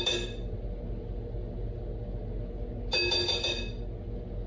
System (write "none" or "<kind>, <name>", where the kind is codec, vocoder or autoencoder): none